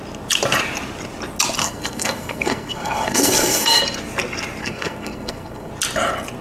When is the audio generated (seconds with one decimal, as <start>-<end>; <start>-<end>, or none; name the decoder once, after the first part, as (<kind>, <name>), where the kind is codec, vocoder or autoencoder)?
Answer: 1.6-3.8 (codec, SNAC); 4.6-5.7